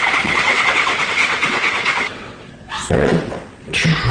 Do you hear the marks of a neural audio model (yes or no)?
yes